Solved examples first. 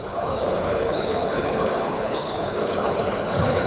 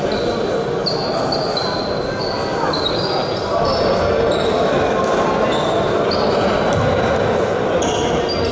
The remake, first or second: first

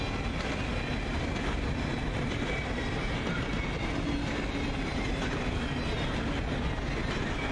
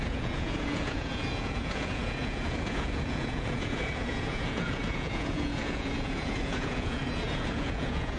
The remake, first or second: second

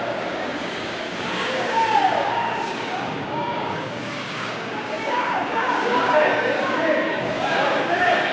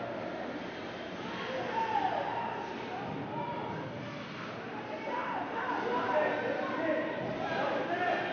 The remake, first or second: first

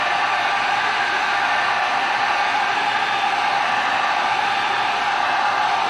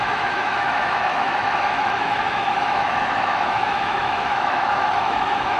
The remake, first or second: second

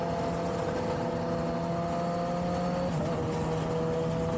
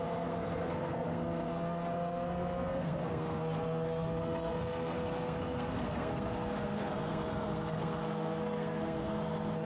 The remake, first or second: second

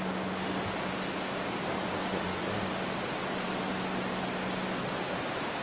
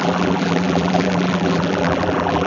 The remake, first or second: second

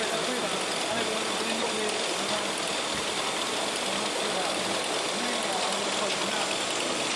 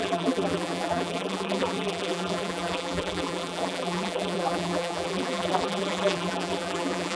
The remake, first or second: second